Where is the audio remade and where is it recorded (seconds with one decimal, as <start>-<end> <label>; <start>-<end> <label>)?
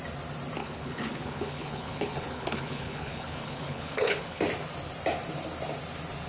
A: 0.0-0.6 recorded; 0.6-4.4 remade; 4.4-6.3 recorded